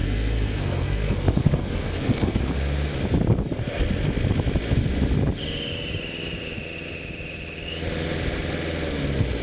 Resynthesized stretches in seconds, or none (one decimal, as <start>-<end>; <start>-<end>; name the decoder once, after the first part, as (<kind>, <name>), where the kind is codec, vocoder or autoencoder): 0.0-2.4 (codec, SNAC)